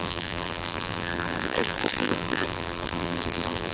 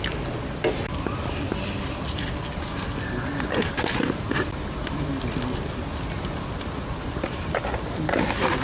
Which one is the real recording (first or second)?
second